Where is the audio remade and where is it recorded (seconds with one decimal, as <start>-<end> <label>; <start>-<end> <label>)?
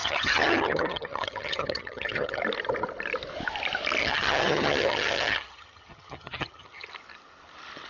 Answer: 0.0-2.4 remade; 2.4-4.0 recorded; 4.0-6.9 remade; 6.9-7.9 recorded